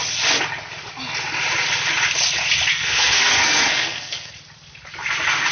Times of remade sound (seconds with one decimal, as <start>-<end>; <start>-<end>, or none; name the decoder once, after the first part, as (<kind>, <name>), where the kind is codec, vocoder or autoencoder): 2.7-4.3 (codec, SNAC)

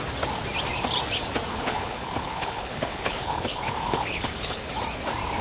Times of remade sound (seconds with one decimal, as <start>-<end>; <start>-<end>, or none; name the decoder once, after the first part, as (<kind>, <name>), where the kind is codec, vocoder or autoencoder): 1.5-4.7 (codec, HILCodec)

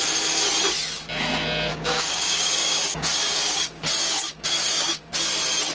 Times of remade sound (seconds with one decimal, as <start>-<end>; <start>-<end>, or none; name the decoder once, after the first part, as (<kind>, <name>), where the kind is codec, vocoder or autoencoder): 1.7-5.1 (codec, DAC)

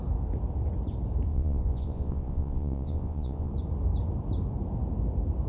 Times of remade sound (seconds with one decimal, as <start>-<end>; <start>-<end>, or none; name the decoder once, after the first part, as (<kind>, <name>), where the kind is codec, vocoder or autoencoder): 1.3-3.5 (vocoder, Vocos)

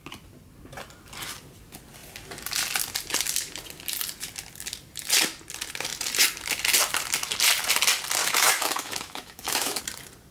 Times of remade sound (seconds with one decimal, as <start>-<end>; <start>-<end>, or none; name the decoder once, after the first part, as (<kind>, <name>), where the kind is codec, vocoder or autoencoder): 8.2-9.8 (autoencoder, DAC-VAE)

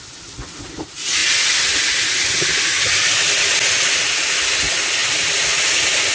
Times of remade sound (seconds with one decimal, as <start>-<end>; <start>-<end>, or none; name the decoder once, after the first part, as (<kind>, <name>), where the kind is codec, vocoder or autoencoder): none